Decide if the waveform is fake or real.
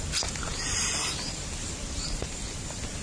real